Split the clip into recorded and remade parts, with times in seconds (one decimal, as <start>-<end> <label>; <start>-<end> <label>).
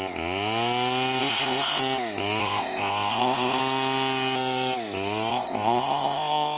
0.0-1.2 recorded; 1.2-1.8 remade; 1.8-2.4 recorded; 2.4-3.6 remade; 3.6-5.3 recorded; 5.3-6.6 remade